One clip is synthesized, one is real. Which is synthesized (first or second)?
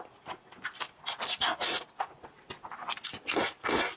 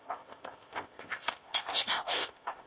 second